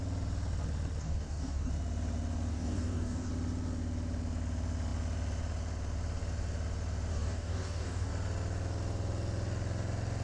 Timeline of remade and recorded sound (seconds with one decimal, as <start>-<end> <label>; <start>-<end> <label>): 0.0-1.0 recorded; 1.0-1.7 remade; 1.7-2.5 recorded; 2.5-3.3 remade; 3.3-7.1 recorded; 7.1-8.1 remade; 8.1-10.2 recorded